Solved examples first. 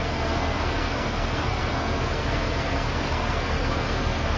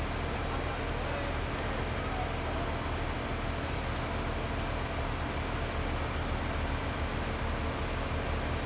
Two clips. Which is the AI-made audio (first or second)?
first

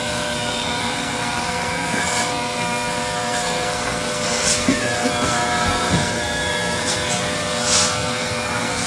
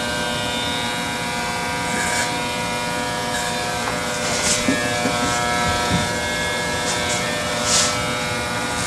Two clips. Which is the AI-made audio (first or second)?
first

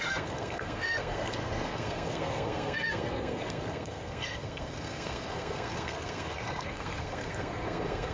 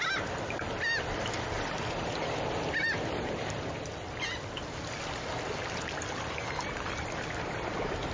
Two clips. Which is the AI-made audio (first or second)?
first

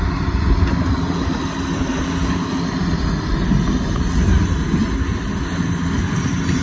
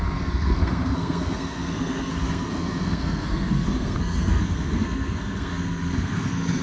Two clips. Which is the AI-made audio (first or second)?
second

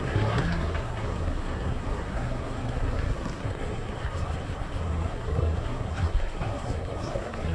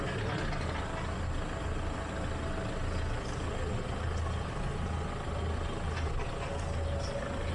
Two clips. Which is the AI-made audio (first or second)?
first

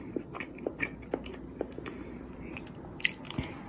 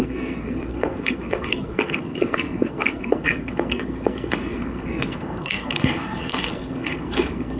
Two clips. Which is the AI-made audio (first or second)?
second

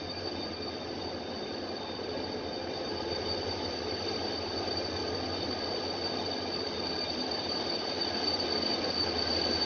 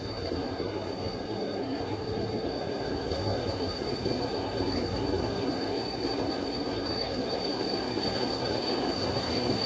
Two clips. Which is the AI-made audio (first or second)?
second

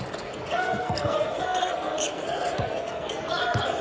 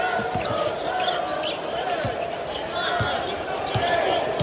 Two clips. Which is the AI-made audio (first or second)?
first